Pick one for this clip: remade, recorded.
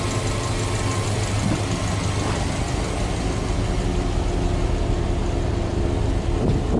recorded